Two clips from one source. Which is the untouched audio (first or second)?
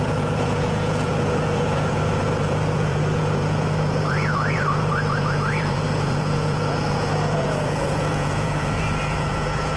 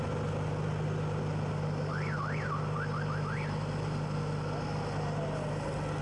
second